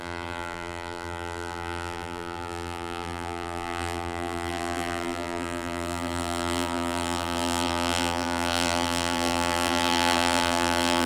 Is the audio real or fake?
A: fake